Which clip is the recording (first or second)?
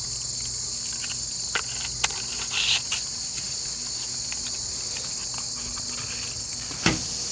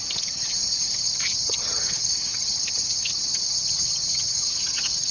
first